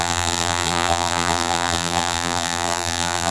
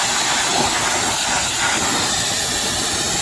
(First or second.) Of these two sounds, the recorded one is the second